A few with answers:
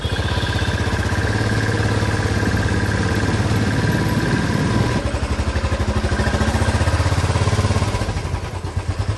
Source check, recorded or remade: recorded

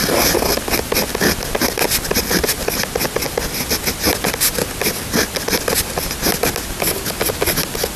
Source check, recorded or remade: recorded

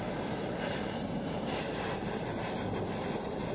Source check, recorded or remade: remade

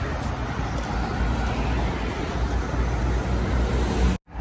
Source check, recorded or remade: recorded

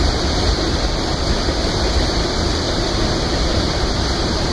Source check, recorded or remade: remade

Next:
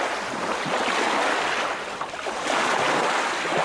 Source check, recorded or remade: recorded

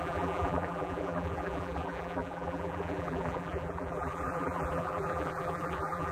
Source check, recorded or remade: remade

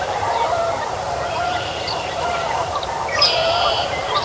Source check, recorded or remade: remade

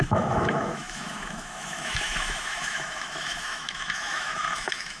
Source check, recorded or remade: remade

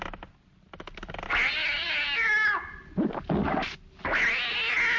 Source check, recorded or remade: recorded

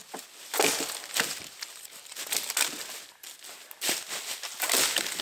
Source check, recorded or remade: recorded